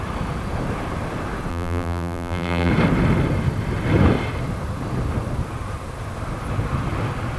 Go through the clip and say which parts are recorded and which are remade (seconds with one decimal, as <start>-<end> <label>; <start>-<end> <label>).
0.0-1.5 recorded; 1.5-2.7 remade; 2.7-7.4 recorded